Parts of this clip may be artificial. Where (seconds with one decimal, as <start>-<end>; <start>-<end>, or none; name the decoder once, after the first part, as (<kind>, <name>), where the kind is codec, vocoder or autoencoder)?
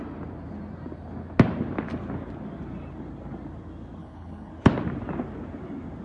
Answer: 4.0-4.5 (codec, HILCodec)